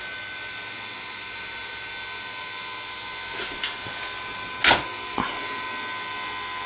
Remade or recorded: recorded